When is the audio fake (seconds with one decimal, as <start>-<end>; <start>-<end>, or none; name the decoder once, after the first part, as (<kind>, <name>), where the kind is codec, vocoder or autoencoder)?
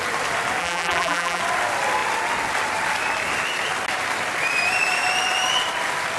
0.6-1.4 (vocoder, BigVGAN v2)